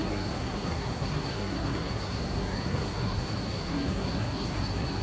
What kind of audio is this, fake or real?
fake